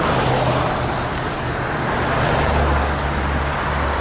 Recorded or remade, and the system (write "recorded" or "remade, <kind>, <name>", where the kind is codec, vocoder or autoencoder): recorded